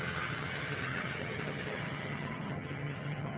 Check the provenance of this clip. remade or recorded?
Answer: remade